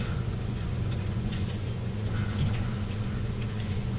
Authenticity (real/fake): fake